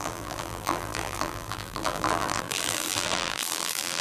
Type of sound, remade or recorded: remade